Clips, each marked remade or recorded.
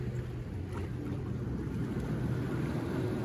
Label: recorded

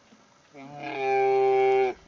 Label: recorded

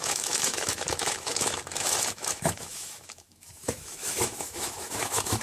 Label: remade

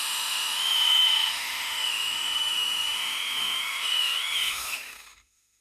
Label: remade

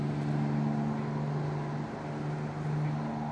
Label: recorded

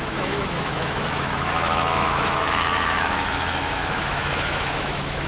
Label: remade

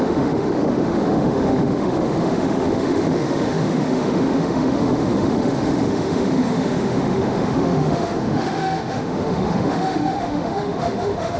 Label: remade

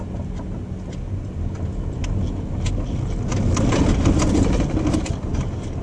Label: recorded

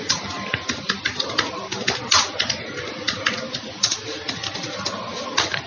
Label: recorded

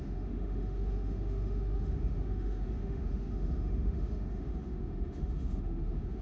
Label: remade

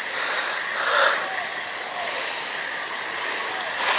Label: recorded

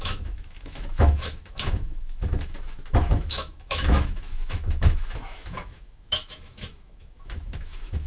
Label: remade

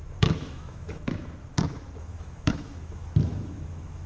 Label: remade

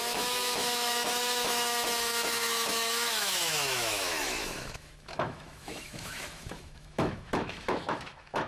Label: remade